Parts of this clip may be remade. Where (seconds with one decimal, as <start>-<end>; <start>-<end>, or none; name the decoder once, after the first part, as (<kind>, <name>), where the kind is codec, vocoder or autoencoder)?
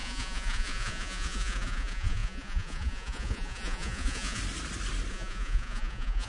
0.0-4.4 (vocoder, Vocos); 5.1-6.3